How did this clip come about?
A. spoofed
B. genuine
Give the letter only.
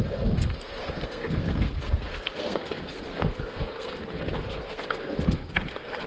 A